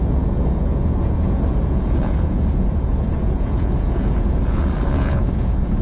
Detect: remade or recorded remade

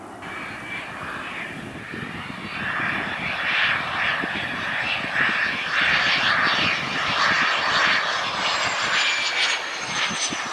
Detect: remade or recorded recorded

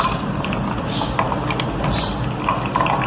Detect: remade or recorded recorded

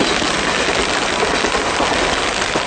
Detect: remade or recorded recorded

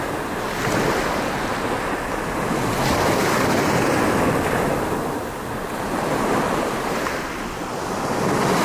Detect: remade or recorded recorded